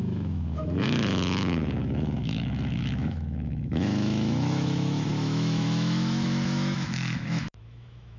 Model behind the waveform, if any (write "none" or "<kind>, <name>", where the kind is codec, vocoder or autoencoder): autoencoder, DAC-VAE